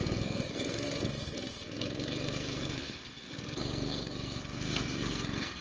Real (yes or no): no